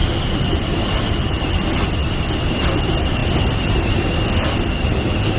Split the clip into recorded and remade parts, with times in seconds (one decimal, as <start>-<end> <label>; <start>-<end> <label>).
0.0-5.4 recorded